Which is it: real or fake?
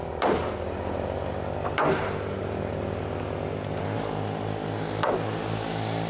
real